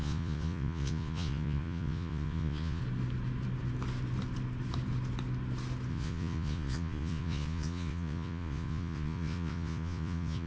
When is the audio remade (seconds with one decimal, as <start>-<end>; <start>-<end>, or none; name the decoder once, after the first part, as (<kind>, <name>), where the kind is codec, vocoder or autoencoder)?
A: 0.0-2.8 (vocoder, Vocos); 5.9-10.5